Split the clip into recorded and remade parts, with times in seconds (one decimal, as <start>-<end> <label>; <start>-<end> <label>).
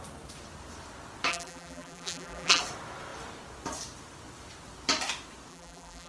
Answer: 0.0-1.3 recorded; 1.3-2.6 remade; 2.6-5.5 recorded; 5.5-6.1 remade